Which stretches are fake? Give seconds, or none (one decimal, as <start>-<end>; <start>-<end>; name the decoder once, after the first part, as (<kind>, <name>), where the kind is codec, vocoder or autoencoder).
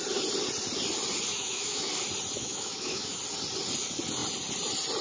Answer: 1.3-1.9 (autoencoder, DAC-VAE); 2.4-3.2